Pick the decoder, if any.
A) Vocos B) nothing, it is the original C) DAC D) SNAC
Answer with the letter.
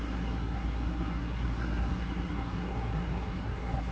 D